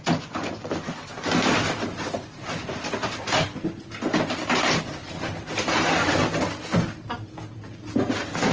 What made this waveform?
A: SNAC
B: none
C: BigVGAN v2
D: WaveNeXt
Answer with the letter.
B